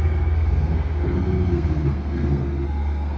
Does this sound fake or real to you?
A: fake